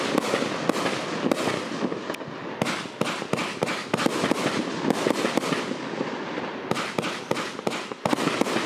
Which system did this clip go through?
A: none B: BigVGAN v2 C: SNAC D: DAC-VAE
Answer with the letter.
A